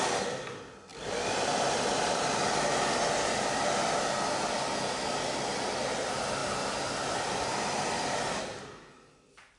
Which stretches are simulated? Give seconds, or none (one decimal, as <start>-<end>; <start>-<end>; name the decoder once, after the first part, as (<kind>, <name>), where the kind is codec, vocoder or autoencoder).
0.9-3.6 (vocoder, BigVGAN v2); 6.4-8.4